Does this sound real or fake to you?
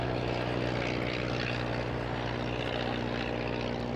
real